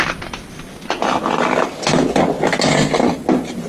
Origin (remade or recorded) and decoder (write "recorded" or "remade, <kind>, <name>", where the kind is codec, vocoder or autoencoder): recorded